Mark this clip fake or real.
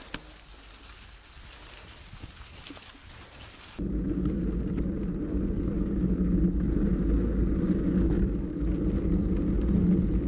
real